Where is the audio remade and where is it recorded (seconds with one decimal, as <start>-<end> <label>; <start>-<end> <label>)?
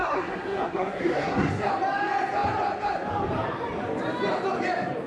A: 0.0-1.7 remade; 1.7-5.1 recorded